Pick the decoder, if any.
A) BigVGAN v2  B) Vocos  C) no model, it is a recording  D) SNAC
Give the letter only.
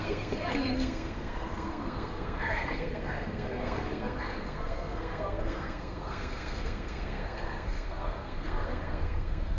D